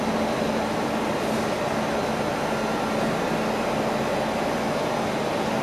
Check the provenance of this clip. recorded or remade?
recorded